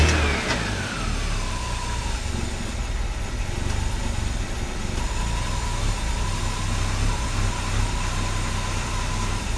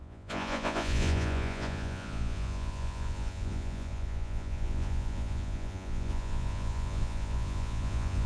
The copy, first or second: second